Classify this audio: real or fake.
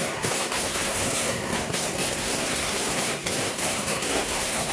fake